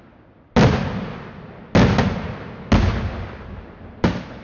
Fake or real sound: real